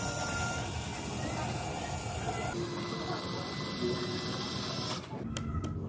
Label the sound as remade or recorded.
recorded